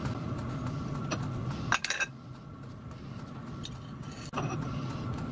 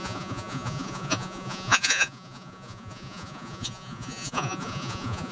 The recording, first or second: first